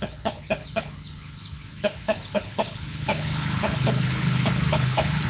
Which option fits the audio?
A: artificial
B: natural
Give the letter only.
A